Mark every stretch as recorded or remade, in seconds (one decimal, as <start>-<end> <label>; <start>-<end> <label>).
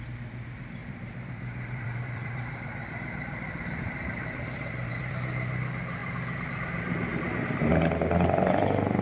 0.0-0.8 recorded; 0.8-5.1 remade; 5.1-6.0 recorded; 6.0-6.5 remade; 6.5-9.0 recorded